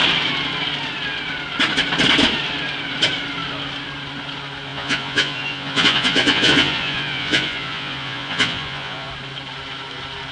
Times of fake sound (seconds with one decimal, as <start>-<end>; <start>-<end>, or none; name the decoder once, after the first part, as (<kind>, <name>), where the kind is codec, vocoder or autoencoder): 4.7-9.1 (vocoder, Vocos)